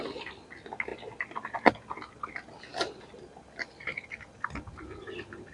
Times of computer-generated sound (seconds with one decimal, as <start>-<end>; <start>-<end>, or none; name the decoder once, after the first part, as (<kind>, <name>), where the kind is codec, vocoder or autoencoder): none